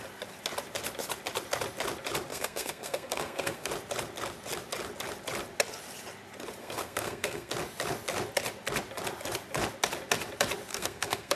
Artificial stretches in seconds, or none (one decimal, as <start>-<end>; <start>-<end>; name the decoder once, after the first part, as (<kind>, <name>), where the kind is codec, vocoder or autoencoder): 2.3-3.7 (codec, SNAC); 6.6-7.5; 10.7-11.4